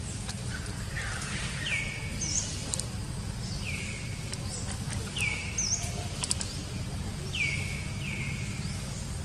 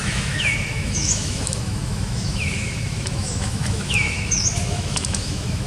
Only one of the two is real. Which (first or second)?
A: first